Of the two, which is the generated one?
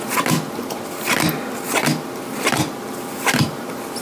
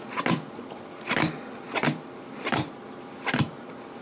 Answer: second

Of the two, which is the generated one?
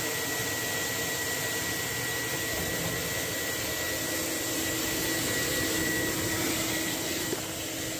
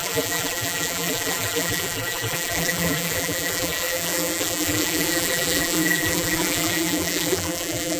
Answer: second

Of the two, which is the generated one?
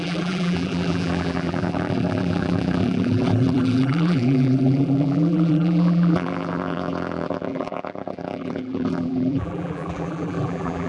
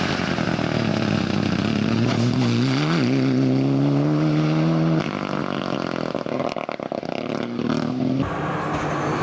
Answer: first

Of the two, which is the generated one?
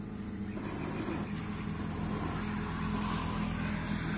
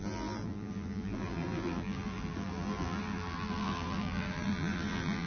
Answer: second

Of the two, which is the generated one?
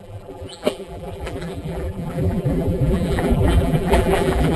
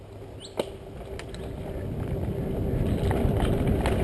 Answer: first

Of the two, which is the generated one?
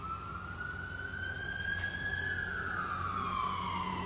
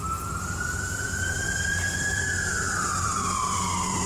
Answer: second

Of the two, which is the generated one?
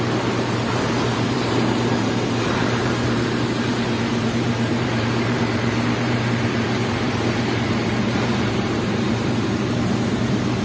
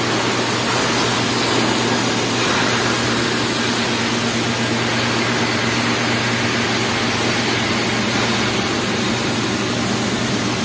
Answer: first